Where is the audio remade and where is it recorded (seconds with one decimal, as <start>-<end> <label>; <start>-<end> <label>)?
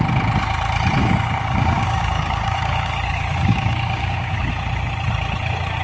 0.0-1.0 recorded; 1.0-4.5 remade; 4.5-5.8 recorded